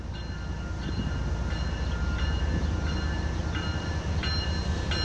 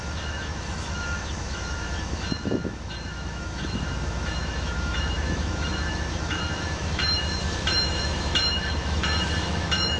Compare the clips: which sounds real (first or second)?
first